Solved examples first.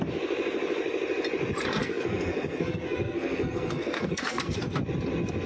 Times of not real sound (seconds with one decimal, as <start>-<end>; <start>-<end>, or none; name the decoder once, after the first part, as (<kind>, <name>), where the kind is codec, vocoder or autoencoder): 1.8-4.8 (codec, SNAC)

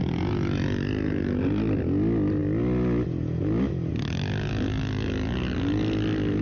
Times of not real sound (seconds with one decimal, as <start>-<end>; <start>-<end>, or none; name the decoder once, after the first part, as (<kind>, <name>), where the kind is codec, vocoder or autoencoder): none

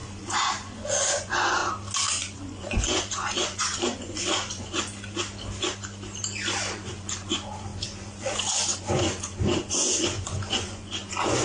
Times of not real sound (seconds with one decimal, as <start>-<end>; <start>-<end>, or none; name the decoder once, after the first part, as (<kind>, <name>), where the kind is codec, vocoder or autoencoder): 0.0-1.6 (vocoder, Vocos); 2.1-4.9; 6.7-11.4